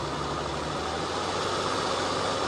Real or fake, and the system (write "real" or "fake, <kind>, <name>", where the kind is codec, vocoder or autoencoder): real